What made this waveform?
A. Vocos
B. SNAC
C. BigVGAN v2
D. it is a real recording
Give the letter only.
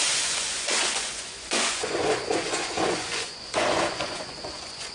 A